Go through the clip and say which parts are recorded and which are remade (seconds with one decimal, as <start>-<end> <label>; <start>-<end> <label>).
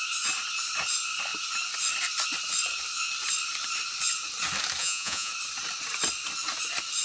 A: 0.0-4.8 recorded; 4.8-5.3 remade; 5.3-7.0 recorded